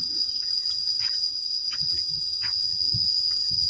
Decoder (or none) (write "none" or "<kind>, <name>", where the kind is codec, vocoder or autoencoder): vocoder, HiFi-GAN